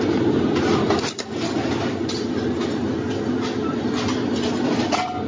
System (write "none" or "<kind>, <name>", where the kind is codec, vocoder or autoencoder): none